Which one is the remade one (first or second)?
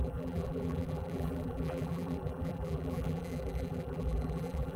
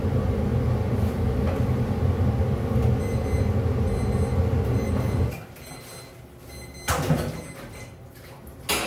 first